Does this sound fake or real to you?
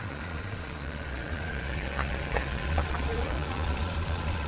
fake